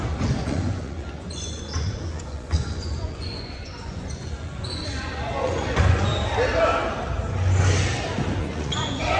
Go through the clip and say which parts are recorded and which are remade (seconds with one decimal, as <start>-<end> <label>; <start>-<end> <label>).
0.0-6.1 remade; 6.1-8.4 recorded; 8.4-9.2 remade